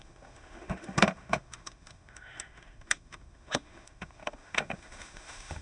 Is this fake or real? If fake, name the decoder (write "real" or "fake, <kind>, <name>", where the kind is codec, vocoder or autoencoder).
fake, autoencoder, DAC-VAE